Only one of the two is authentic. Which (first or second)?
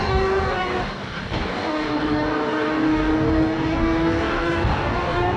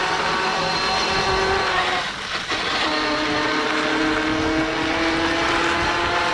second